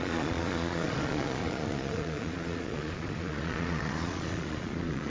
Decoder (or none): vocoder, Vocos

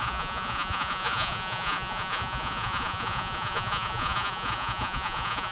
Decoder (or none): vocoder, Vocos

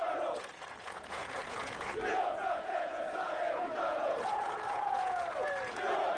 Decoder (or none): vocoder, Vocos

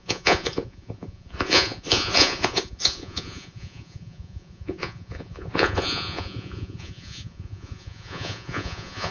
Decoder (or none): vocoder, Vocos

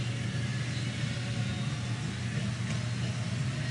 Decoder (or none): none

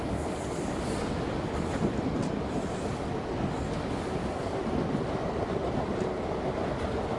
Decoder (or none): none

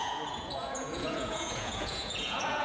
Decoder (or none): vocoder, Vocos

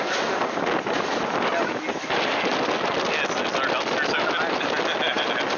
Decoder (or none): none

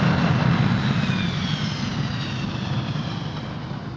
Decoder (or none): none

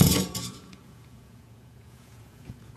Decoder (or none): vocoder, Vocos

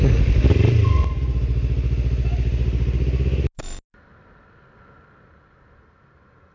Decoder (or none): none